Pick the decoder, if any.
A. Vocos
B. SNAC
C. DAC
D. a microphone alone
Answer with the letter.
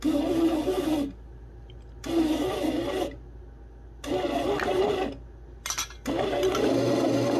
D